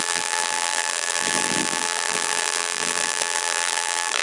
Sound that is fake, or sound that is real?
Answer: fake